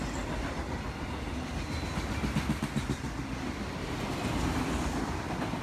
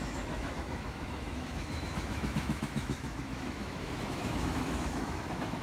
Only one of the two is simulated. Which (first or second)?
second